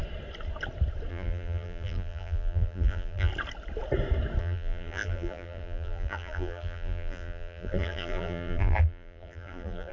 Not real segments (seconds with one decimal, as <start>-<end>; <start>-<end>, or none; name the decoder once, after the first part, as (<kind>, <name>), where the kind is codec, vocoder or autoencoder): 1.1-3.3 (vocoder, BigVGAN v2); 4.4-9.9